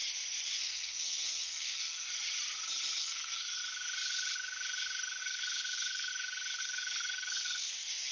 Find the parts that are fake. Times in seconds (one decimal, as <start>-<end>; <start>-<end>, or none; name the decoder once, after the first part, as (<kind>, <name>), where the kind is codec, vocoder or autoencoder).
0.6-2.1 (codec, SNAC); 3.0-3.6; 5.2-6.1; 6.6-8.1